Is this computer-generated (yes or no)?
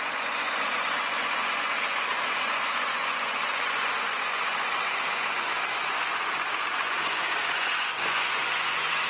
yes